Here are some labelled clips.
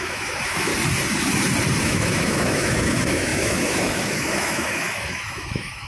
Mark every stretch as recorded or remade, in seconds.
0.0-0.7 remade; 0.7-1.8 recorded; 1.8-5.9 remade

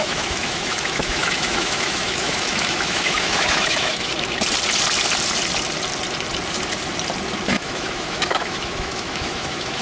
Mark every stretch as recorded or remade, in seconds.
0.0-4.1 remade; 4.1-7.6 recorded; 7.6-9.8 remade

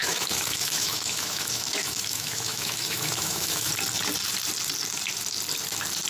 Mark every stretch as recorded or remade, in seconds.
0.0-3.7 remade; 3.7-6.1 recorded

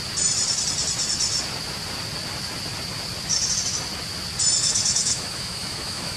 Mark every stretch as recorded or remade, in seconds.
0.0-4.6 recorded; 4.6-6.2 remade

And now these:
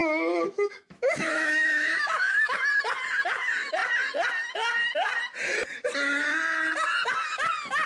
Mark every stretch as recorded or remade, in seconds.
0.0-2.6 remade; 2.6-7.9 recorded

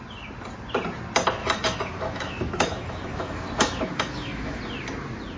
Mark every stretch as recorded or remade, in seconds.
0.0-1.4 recorded; 1.4-4.6 remade; 4.6-5.4 recorded